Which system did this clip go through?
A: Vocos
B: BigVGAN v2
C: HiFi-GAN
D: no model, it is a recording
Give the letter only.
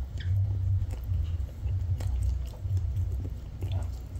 D